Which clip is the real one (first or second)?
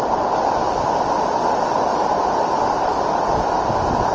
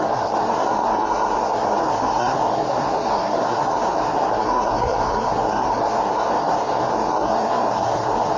first